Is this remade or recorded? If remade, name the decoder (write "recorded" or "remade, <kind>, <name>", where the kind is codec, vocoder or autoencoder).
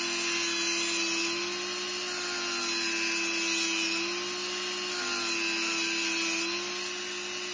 recorded